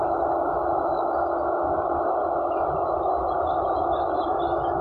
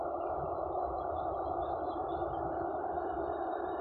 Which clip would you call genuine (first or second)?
first